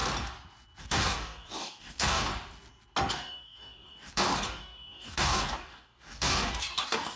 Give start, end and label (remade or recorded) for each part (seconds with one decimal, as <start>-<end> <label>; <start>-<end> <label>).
0.0-0.8 recorded; 0.8-2.3 remade; 2.3-3.1 recorded; 3.1-7.2 remade